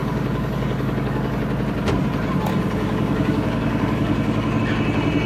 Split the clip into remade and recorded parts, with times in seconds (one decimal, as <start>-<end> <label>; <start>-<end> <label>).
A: 0.0-1.4 remade; 1.4-2.5 recorded; 2.5-4.6 remade; 4.6-5.3 recorded